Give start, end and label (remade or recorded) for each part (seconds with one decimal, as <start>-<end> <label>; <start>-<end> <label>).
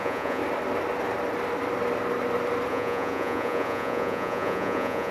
0.0-0.4 remade; 0.4-2.7 recorded; 2.7-5.1 remade